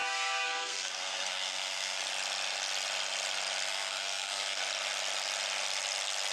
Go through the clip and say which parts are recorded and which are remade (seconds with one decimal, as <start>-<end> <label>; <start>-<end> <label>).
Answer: 0.0-2.0 remade; 2.0-3.7 recorded; 3.7-4.6 remade; 4.6-6.3 recorded